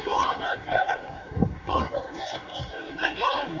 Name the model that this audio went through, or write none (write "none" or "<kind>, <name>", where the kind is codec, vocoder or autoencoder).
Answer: codec, SNAC